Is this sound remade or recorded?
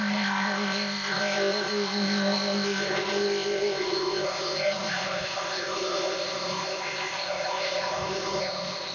remade